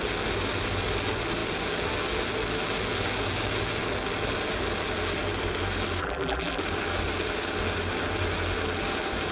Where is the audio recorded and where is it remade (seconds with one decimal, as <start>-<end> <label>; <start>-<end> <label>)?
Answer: 0.0-6.0 recorded; 6.0-6.6 remade; 6.6-9.3 recorded